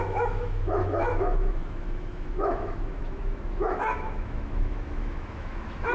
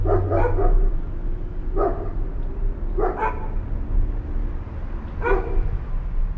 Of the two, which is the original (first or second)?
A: second